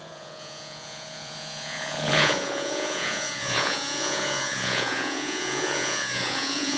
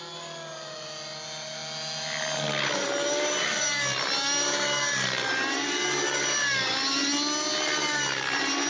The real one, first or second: second